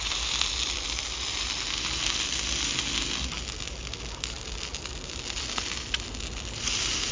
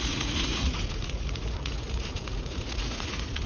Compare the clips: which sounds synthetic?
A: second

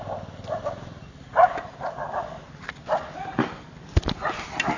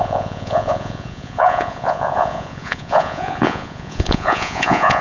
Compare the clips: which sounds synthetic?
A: second